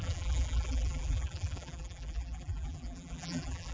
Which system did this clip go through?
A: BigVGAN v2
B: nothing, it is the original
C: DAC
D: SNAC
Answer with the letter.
A